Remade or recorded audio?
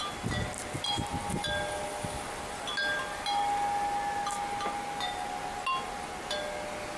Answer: recorded